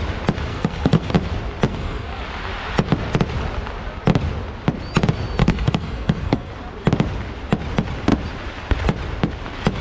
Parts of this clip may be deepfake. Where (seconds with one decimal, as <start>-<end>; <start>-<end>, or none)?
0.5-1.1; 1.7-2.2; 5.4-6.5